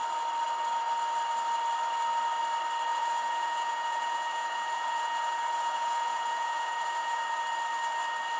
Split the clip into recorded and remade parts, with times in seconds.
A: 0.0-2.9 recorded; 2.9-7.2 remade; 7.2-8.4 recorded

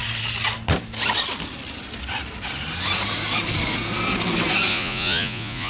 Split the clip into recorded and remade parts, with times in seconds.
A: 0.0-4.7 recorded; 4.7-5.7 remade

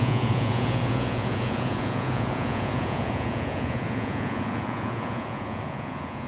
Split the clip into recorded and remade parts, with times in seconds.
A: 0.0-6.3 remade